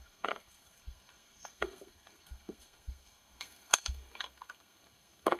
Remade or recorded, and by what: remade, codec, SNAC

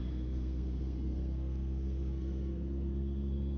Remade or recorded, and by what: remade, codec, SNAC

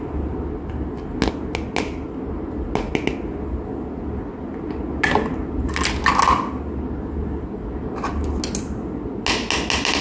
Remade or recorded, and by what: recorded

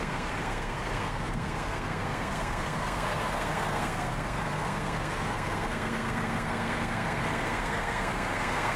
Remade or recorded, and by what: remade, codec, SNAC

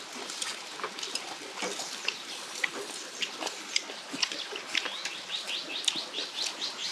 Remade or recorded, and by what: recorded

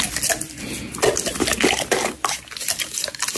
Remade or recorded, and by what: recorded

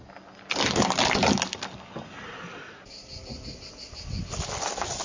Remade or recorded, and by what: recorded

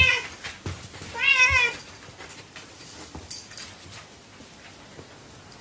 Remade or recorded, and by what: recorded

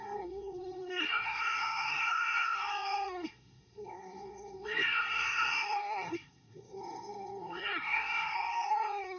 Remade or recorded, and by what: remade, codec, SNAC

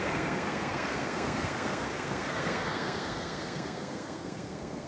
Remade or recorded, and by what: remade, codec, SNAC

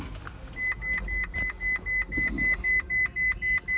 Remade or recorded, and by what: recorded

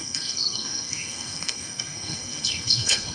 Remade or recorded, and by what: remade, codec, SNAC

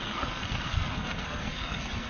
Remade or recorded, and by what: remade, codec, SNAC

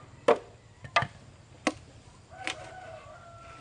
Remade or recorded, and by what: recorded